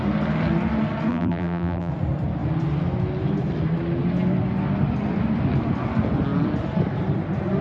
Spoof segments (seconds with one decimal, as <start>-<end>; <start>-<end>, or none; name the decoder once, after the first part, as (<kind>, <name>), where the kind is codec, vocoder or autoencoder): 1.1-1.9 (vocoder, BigVGAN v2)